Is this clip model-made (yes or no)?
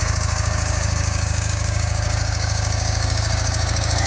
yes